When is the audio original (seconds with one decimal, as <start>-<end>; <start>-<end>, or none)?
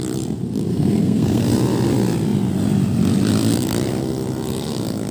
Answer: 0.0-0.7; 1.4-5.1